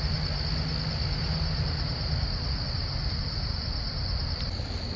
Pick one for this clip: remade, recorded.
recorded